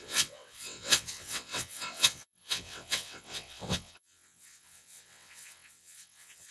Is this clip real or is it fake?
fake